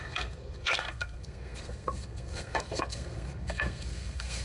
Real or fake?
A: fake